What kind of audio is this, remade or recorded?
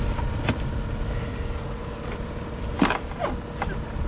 recorded